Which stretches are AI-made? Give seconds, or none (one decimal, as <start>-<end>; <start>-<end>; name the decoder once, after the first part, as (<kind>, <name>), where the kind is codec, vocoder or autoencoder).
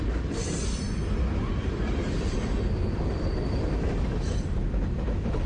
1.6-4.9 (vocoder, BigVGAN v2)